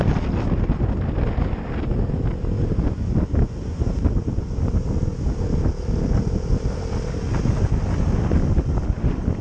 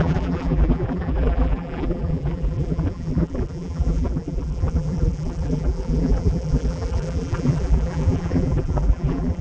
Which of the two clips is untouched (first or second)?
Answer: first